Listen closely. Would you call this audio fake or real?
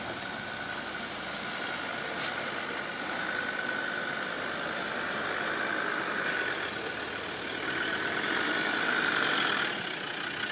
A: real